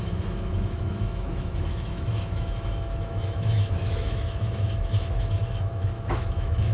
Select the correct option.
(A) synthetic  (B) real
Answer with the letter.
A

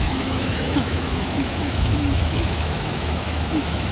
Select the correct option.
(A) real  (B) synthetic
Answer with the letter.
B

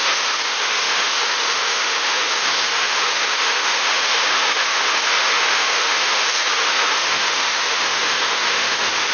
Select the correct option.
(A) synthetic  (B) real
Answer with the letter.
A